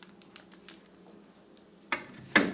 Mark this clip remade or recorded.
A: recorded